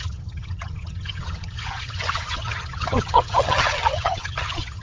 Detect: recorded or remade remade